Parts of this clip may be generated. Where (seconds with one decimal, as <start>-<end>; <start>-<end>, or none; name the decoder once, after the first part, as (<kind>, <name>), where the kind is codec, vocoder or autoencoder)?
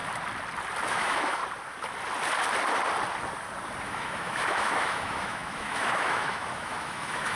0.9-1.4 (autoencoder, DAC-VAE); 3.8-7.4